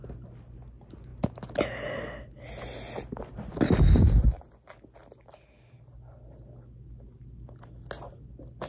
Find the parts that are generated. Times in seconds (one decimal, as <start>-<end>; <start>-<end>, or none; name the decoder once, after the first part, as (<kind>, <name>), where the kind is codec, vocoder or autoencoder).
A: none